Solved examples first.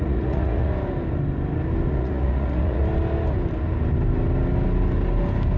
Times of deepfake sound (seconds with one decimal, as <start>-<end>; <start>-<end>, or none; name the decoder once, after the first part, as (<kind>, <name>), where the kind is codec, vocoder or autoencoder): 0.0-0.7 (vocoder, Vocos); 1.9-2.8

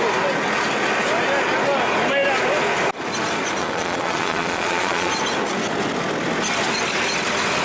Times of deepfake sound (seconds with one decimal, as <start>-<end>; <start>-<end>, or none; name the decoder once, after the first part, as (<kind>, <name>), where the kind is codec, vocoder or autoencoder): 3.6-5.1 (vocoder, Vocos)

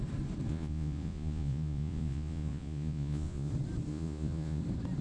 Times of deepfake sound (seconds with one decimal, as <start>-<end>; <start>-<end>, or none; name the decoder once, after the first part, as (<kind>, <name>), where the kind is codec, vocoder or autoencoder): 0.5-3.5 (vocoder, Vocos); 3.9-4.6

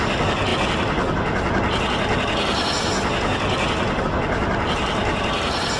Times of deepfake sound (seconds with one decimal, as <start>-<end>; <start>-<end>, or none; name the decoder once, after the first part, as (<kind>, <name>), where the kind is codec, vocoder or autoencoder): none